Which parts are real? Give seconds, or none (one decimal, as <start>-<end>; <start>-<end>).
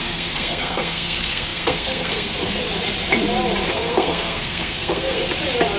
2.6-3.7; 5.2-5.8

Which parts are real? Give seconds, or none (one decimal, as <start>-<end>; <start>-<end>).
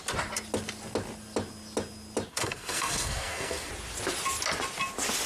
0.0-2.3; 3.7-5.3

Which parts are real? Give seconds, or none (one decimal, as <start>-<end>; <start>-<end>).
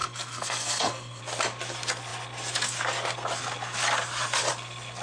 1.2-5.0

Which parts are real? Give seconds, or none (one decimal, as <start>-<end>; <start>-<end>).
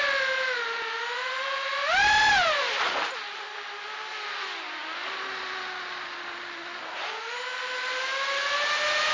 0.0-9.1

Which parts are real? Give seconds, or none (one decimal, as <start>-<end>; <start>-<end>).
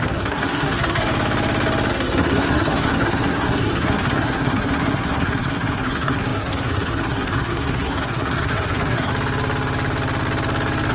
1.1-1.9; 9.1-10.9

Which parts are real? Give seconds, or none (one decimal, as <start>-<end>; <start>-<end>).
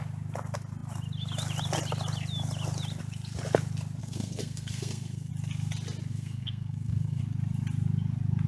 0.0-4.0; 5.3-6.1; 7.2-8.5